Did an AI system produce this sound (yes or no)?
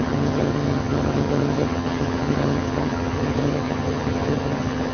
yes